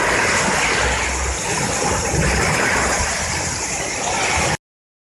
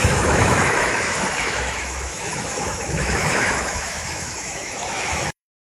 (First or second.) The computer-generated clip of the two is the second